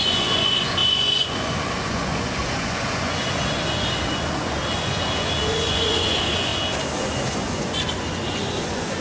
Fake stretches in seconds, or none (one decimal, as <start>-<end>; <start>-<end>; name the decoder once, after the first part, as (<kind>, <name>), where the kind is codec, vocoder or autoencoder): 0.0-6.5 (vocoder, Vocos); 7.0-9.0